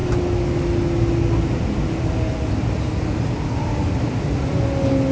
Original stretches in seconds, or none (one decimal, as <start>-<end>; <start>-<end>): 0.0-5.1